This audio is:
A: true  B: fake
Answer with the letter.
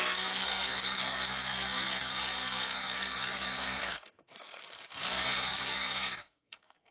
B